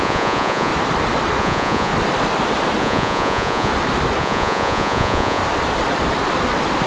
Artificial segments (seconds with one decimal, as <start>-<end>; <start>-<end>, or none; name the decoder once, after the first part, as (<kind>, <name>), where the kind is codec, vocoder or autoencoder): 0.0-0.7 (vocoder, Vocos); 1.4-1.9; 2.8-3.7; 4.2-5.4